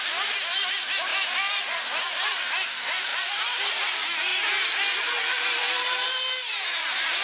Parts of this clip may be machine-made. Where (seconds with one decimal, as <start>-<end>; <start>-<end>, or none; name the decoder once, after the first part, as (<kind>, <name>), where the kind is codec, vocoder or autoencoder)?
1.1-1.6 (vocoder, BigVGAN v2); 3.1-3.7